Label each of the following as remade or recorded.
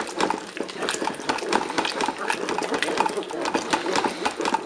recorded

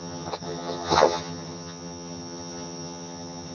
remade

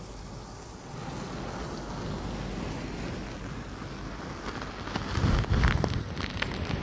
recorded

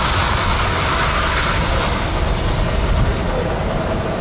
recorded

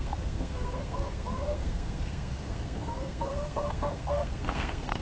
remade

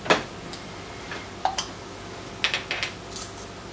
recorded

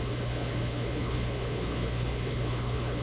remade